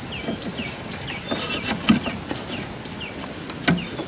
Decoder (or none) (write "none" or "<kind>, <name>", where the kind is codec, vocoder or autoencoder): none